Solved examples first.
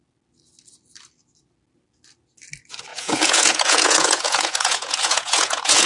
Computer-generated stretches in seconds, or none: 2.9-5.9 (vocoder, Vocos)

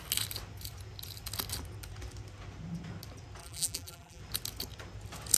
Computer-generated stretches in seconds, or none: 3.4-4.2 (vocoder, BigVGAN v2)

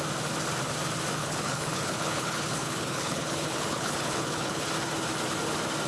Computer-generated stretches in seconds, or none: 1.2-4.7 (codec, HILCodec)

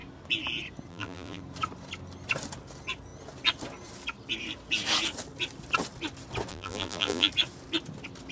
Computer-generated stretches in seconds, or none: 0.9-1.4 (vocoder, BigVGAN v2); 6.5-7.3

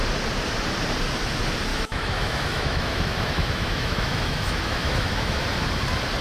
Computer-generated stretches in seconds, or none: 1.7-5.4 (autoencoder, DAC-VAE)

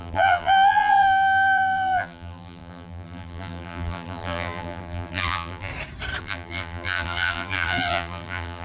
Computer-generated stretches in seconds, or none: 0.0-5.7 (vocoder, BigVGAN v2); 6.2-8.6